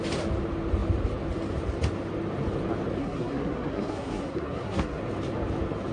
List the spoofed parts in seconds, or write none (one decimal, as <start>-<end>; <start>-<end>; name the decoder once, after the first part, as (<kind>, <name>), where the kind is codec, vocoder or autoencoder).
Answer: 3.0-5.0 (codec, SNAC)